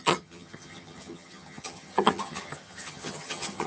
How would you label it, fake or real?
fake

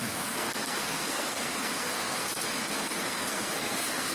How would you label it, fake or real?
fake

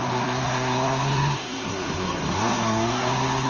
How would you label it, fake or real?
fake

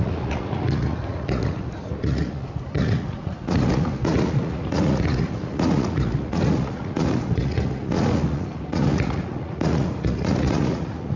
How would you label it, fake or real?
fake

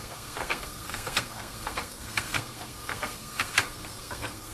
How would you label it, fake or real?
fake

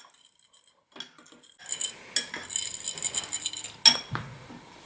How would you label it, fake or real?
real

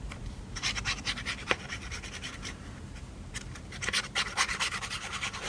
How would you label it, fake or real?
fake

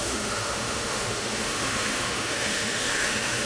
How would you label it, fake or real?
fake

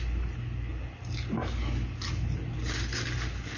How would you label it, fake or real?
real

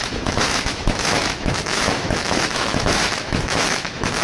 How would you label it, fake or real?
fake